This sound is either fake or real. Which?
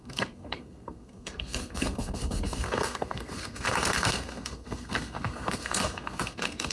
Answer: fake